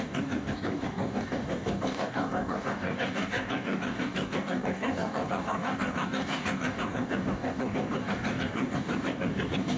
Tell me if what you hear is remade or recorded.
remade